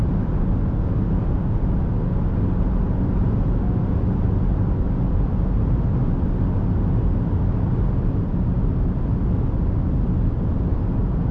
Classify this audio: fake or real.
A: real